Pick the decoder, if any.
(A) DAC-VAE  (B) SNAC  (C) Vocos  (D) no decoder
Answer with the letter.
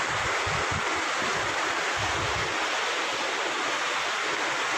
D